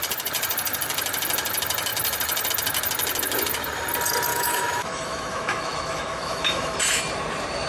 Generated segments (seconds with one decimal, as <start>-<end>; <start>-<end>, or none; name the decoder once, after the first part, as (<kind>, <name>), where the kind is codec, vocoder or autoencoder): 4.3-6.8 (autoencoder, DAC-VAE)

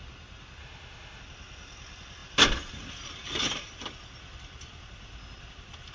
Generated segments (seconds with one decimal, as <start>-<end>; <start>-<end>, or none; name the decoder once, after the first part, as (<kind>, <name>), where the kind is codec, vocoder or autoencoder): 0.6-1.2 (autoencoder, DAC-VAE)

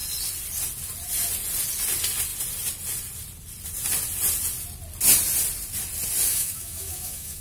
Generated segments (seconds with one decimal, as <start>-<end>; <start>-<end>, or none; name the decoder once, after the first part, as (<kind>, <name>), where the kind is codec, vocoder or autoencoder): 6.3-7.4 (autoencoder, DAC-VAE)